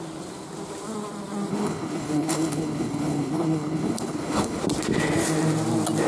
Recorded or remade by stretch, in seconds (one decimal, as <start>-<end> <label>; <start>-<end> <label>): 0.0-1.5 recorded; 1.5-4.6 remade; 4.6-6.1 recorded